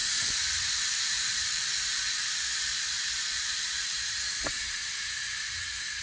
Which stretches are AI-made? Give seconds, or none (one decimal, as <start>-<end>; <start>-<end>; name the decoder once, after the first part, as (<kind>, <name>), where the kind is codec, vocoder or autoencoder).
0.0-4.9 (vocoder, BigVGAN v2)